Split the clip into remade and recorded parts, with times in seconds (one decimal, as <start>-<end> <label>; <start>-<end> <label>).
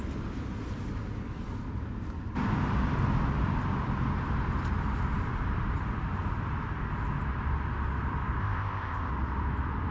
0.0-8.4 recorded; 8.4-9.1 remade; 9.1-9.9 recorded